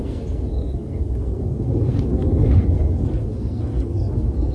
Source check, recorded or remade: remade